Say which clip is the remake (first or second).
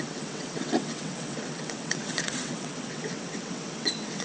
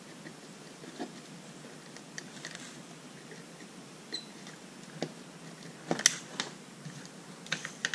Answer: first